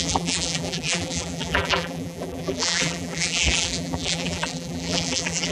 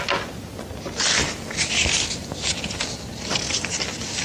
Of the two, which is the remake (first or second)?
first